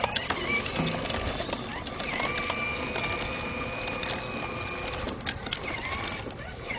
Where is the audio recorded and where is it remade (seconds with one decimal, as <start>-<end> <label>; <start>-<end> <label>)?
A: 0.0-6.8 recorded